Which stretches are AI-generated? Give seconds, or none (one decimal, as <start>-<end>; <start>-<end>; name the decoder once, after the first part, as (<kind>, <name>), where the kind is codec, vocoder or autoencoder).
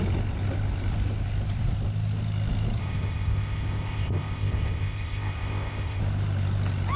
2.8-6.0 (codec, ZipCodec)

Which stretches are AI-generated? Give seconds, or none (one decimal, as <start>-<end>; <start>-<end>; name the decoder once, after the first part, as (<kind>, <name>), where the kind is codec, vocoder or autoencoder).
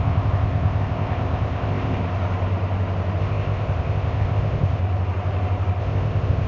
0.0-2.0 (codec, ZipCodec); 3.2-4.8; 5.8-6.5